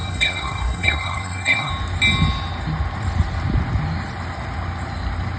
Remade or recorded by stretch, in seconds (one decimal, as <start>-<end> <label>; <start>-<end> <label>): 0.0-1.7 remade; 1.7-5.4 recorded